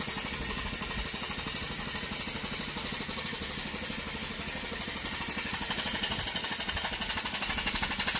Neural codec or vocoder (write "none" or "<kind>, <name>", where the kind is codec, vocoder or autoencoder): none